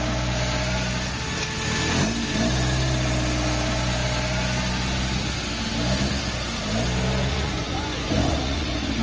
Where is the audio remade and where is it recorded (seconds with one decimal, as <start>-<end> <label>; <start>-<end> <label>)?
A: 0.0-7.3 recorded; 7.3-9.0 remade